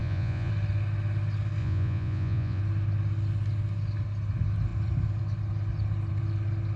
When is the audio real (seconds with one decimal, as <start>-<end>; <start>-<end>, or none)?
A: 0.5-1.6; 2.6-6.8